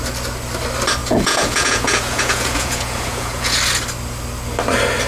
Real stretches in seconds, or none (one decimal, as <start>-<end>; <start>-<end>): 0.0-1.0; 3.6-5.1